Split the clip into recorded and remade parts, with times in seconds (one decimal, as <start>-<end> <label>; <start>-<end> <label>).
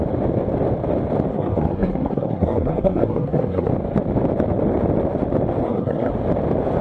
0.0-1.3 recorded; 1.3-3.7 remade; 3.7-5.6 recorded; 5.6-6.1 remade; 6.1-6.8 recorded